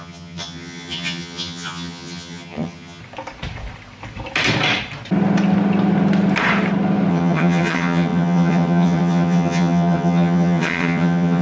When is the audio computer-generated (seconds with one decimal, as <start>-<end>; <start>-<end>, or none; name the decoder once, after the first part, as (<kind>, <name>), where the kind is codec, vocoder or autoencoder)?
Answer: 0.0-3.0 (vocoder, HiFi-GAN); 7.1-11.4